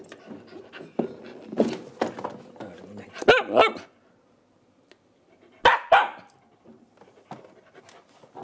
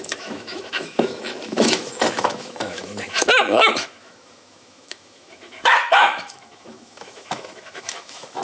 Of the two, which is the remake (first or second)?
second